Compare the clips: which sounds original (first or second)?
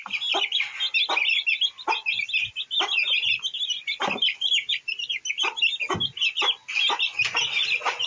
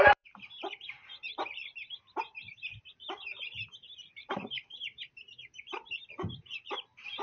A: first